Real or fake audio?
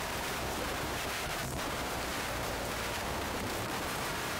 fake